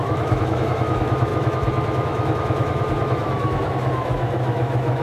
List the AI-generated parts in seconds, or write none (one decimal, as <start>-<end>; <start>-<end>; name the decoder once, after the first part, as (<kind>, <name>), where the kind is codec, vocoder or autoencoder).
0.0-5.0 (autoencoder, DAC-VAE)